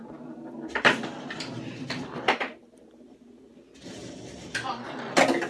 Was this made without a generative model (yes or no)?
yes